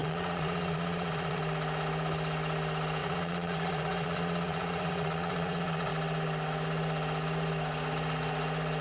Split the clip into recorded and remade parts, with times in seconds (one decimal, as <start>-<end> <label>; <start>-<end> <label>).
0.0-1.4 remade; 1.4-3.0 recorded; 3.0-5.9 remade; 5.9-8.8 recorded